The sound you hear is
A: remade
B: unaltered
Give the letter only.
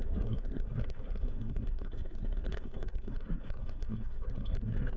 A